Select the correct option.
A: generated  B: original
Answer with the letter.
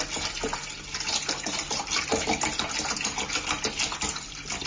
B